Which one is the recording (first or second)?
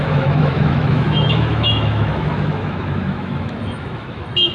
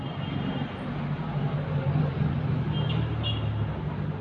second